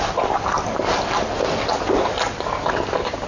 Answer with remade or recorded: recorded